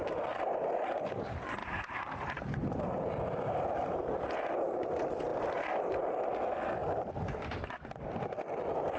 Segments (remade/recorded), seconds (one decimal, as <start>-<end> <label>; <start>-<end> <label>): 0.0-1.6 recorded; 1.6-4.7 remade; 4.7-5.3 recorded; 5.3-5.9 remade; 5.9-9.0 recorded